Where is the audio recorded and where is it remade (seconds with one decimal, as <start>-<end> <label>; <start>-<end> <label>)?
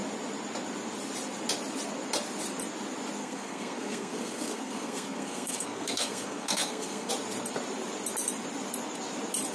0.0-3.2 recorded; 3.2-7.1 remade; 7.1-9.5 recorded